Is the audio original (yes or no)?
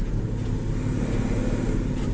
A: yes